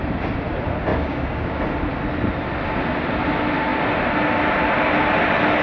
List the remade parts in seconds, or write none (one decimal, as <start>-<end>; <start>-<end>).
0.9-1.6